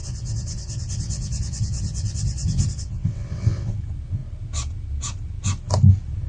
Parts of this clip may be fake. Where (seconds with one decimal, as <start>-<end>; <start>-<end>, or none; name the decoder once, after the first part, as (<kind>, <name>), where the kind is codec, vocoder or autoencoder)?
0.0-3.8 (vocoder, WaveNeXt)